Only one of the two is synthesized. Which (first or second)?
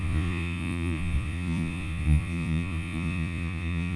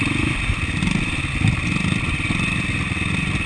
first